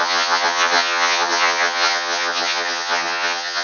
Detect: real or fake fake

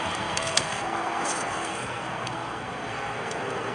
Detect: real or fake fake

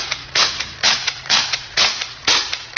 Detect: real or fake fake